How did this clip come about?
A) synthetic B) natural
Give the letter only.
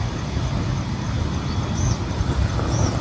B